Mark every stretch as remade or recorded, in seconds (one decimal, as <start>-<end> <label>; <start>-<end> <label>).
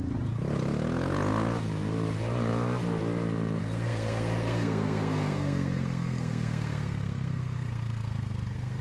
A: 0.0-3.6 recorded; 3.6-8.8 remade